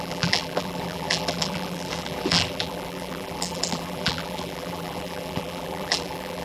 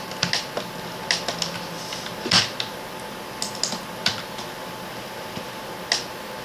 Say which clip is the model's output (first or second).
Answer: first